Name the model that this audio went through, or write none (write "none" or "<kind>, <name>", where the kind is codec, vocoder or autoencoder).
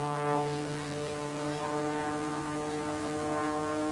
vocoder, BigVGAN v2